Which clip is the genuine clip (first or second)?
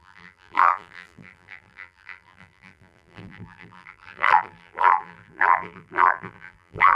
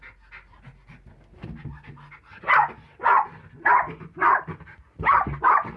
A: second